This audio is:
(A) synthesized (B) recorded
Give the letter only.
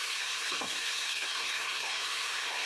A